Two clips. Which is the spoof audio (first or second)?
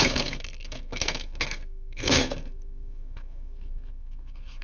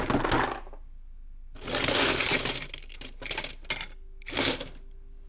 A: first